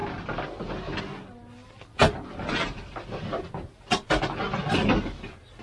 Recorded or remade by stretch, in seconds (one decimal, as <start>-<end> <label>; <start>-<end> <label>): 0.0-5.6 recorded